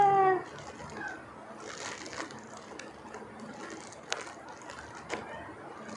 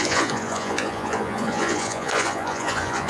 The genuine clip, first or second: first